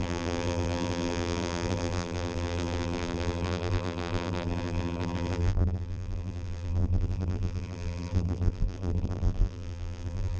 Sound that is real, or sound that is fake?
fake